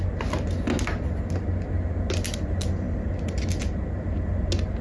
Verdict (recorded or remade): recorded